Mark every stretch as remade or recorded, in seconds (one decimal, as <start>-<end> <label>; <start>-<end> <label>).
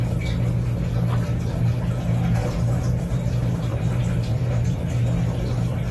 0.0-2.4 recorded; 2.4-4.8 remade; 4.8-5.9 recorded